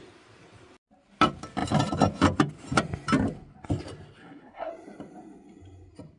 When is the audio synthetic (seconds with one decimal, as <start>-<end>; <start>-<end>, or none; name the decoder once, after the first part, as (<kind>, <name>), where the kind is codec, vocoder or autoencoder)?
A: 4.2-4.7 (codec, SNAC)